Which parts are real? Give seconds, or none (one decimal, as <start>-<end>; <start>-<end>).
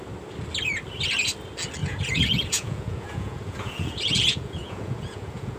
0.0-1.8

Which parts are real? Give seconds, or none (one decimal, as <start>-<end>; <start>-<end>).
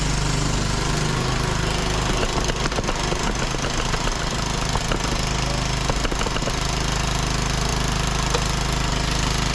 0.0-9.5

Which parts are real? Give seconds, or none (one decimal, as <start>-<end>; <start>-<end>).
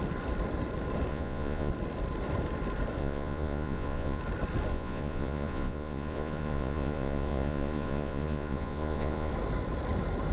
0.0-1.1; 1.7-3.0; 4.2-4.7; 9.3-10.3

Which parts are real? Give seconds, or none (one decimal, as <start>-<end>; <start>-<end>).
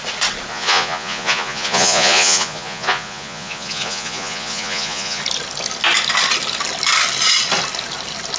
0.0-0.5; 5.2-8.4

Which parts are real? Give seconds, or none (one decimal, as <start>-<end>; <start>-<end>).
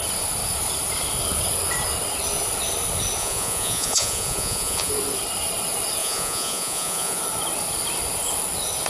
0.0-3.2; 4.9-6.0; 7.2-8.9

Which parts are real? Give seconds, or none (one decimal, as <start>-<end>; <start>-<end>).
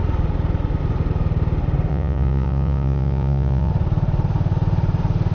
0.0-1.9; 3.7-5.3